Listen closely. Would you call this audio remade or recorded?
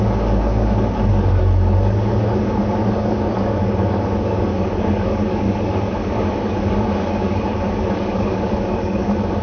remade